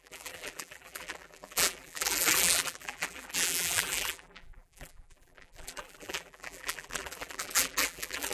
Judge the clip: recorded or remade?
remade